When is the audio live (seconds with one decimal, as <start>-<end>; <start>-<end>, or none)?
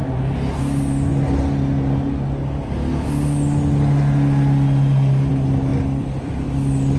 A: 0.0-5.7; 6.3-7.0